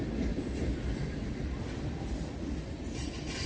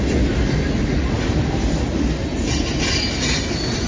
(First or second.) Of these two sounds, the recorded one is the second